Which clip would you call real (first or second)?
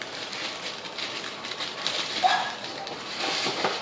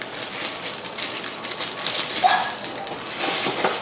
second